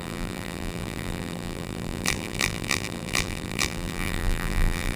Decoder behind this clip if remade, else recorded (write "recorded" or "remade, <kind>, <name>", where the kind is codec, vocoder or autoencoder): remade, vocoder, BigVGAN v2